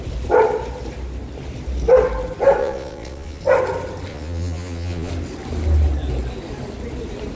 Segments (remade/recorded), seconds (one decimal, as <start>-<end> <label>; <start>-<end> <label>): 0.0-2.6 recorded; 2.6-3.4 remade; 3.4-4.1 recorded; 4.1-5.1 remade; 5.1-7.4 recorded